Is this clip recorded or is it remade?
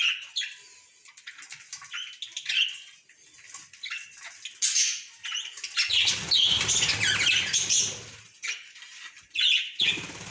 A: recorded